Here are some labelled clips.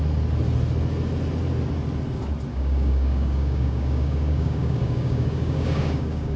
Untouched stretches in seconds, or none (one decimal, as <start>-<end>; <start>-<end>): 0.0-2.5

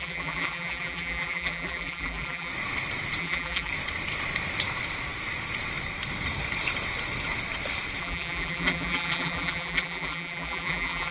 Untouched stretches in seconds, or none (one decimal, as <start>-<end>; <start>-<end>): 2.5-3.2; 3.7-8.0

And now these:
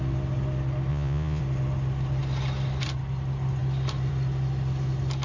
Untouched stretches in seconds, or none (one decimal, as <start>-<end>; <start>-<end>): 0.0-0.9; 1.4-5.2

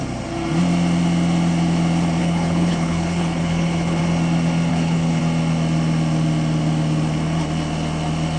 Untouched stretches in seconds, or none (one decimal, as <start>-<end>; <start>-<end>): 0.0-2.2; 4.0-4.7; 5.2-8.4

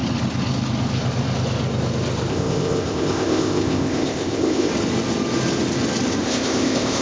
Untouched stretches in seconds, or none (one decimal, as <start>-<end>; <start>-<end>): 0.0-2.3; 4.7-6.2